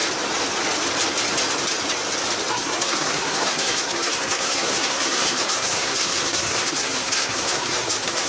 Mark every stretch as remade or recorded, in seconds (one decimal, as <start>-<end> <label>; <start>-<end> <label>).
0.0-2.5 recorded; 2.5-8.3 remade

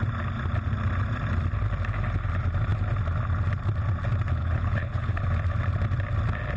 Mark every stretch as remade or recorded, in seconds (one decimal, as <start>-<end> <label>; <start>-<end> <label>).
0.0-4.4 recorded; 4.4-5.2 remade; 5.2-6.6 recorded

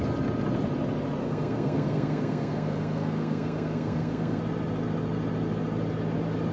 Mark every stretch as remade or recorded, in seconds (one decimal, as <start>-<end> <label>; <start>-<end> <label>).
0.0-1.2 recorded; 1.2-4.4 remade; 4.4-6.5 recorded

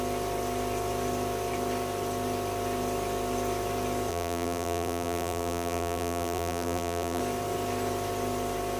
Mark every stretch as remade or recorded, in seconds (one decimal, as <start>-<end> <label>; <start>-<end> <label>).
0.0-4.1 recorded; 4.1-7.2 remade; 7.2-8.8 recorded